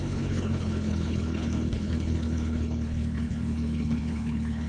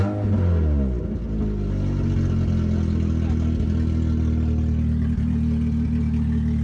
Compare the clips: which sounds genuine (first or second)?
second